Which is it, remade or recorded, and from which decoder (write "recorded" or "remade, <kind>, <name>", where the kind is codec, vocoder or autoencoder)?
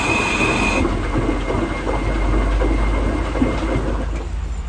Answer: recorded